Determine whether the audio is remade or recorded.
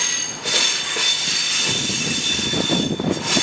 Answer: recorded